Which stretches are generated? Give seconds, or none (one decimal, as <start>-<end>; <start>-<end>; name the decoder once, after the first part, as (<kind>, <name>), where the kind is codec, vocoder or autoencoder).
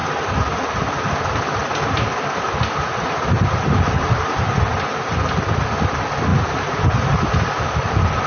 none